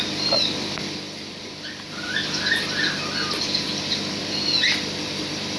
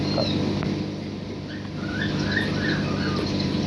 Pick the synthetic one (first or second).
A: second